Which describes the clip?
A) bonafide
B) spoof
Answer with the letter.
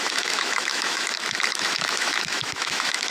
B